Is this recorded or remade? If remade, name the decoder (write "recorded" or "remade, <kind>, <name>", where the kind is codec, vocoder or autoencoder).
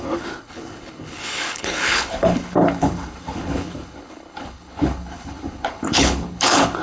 remade, codec, HILCodec